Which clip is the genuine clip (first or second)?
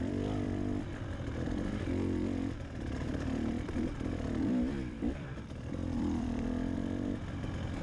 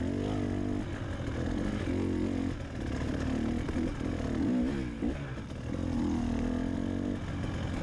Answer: second